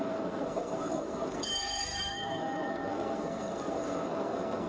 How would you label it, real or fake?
fake